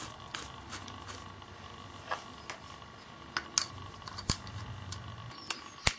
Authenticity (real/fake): real